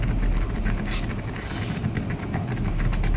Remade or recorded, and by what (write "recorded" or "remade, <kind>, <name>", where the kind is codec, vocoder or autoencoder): recorded